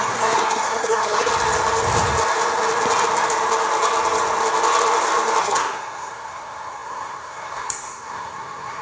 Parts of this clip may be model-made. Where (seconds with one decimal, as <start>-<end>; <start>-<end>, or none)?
0.0-1.3; 5.4-8.8